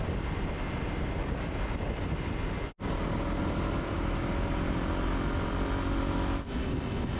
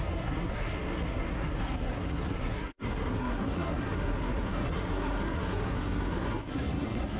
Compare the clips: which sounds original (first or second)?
first